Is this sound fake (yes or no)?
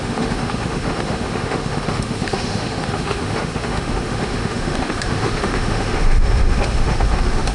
yes